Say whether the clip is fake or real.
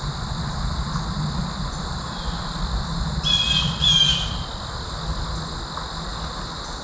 real